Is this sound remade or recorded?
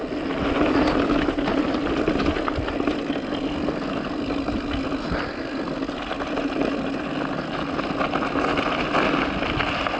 recorded